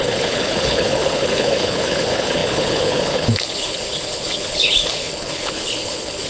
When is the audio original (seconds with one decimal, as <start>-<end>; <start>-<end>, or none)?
none